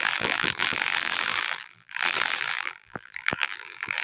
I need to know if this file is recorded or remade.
remade